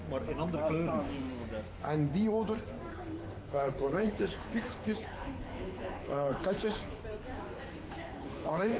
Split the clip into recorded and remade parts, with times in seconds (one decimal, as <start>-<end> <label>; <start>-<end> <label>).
0.0-2.9 recorded; 2.9-7.0 remade; 7.0-8.0 recorded; 8.0-8.8 remade